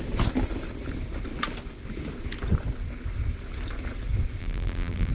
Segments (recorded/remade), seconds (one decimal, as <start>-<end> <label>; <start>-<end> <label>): 0.0-4.4 recorded; 4.4-5.1 remade